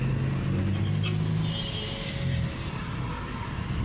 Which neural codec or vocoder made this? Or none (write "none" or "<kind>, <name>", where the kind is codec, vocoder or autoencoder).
none